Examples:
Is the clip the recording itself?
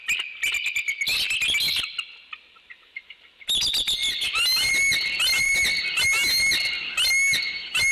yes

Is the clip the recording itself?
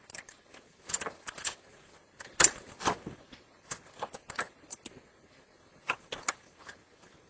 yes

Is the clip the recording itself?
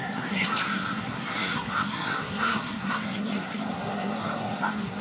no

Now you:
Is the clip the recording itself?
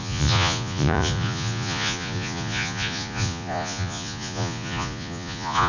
no